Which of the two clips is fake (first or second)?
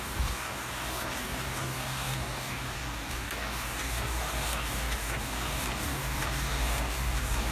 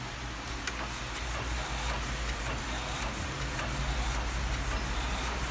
first